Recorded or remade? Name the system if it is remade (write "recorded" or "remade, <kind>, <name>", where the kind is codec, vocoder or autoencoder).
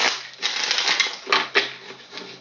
recorded